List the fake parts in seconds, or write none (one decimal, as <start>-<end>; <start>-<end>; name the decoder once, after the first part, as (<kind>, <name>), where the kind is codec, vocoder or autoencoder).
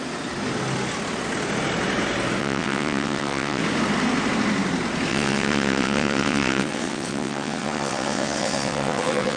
2.4-3.6 (vocoder, WaveNeXt); 5.1-9.4